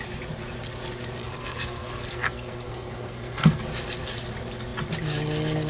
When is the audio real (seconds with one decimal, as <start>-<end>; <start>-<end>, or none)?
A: 0.0-1.2; 3.6-5.7